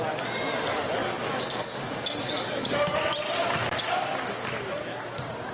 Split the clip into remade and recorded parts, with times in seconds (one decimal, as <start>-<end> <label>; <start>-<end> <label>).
0.0-5.5 recorded